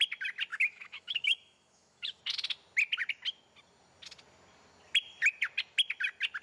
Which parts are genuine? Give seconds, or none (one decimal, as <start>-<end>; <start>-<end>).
0.0-0.5; 2.2-6.4